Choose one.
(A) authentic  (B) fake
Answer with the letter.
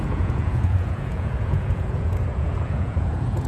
B